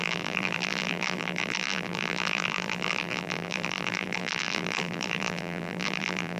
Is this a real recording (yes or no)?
no